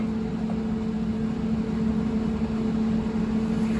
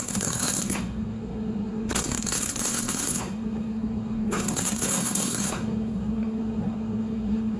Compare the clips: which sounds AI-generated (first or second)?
second